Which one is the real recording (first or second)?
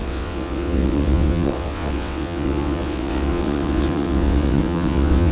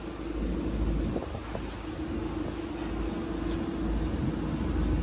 second